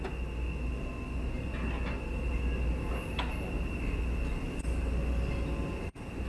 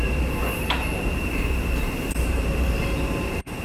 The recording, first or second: first